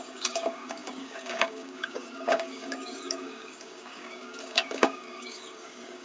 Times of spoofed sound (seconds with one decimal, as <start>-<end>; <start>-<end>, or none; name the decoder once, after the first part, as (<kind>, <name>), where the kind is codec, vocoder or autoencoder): 0.0-6.0 (codec, DAC)